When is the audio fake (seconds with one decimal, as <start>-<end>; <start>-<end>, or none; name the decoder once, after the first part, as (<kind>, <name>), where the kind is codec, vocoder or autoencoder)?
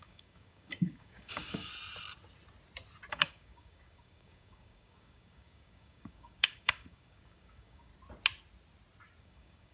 0.0-1.7 (codec, DAC); 3.1-7.9; 9.2-9.7